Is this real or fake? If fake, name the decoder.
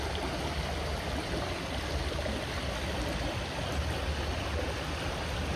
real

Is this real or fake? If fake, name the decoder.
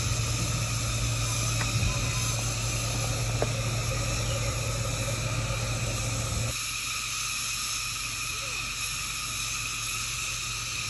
real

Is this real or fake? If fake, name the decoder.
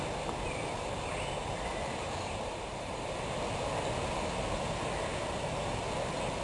real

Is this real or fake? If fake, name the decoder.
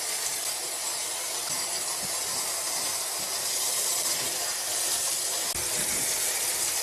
real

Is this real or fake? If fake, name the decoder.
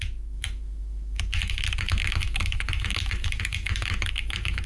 fake, autoencoder, DAC-VAE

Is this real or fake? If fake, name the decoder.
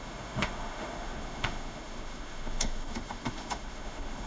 fake, autoencoder, DAC-VAE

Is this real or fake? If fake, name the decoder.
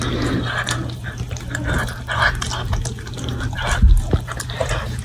real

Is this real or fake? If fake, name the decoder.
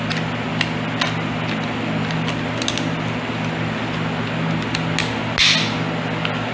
real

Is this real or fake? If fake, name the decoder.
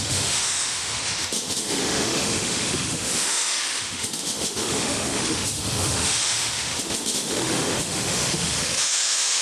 fake, autoencoder, DAC-VAE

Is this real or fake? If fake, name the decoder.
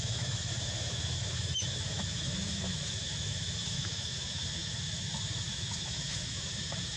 fake, autoencoder, DAC-VAE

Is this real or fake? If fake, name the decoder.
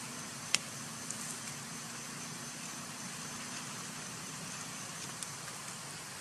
real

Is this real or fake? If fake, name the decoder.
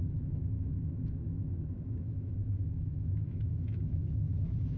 fake, autoencoder, DAC-VAE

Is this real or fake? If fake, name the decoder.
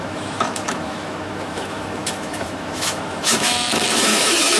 fake, autoencoder, DAC-VAE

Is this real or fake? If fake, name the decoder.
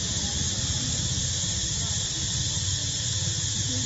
real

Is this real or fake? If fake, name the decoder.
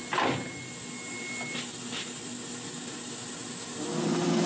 real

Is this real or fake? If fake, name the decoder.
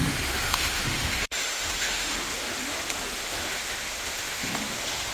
fake, autoencoder, DAC-VAE